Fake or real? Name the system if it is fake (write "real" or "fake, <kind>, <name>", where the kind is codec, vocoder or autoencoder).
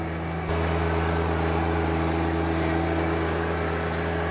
real